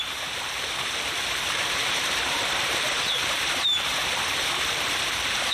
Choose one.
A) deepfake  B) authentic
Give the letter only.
A